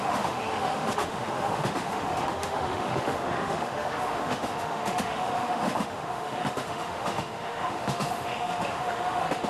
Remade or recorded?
remade